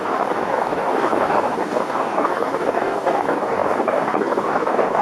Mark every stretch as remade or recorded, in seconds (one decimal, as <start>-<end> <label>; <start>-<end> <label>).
0.0-5.0 remade